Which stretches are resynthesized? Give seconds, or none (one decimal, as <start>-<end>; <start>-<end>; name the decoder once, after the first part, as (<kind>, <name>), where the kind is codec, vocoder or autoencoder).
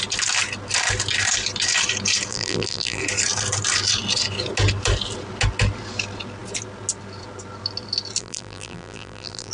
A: 2.3-3.0 (vocoder, BigVGAN v2); 8.2-9.5